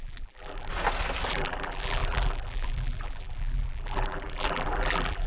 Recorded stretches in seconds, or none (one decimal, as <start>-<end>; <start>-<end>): 0.7-1.3

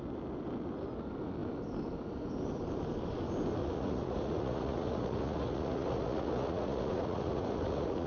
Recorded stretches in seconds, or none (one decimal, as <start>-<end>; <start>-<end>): 0.0-3.6

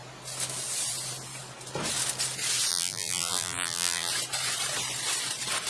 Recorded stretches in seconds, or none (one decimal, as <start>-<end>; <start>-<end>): 0.0-2.7; 4.1-5.7

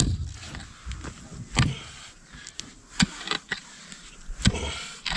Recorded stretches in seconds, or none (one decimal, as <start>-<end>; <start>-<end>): 0.0-5.2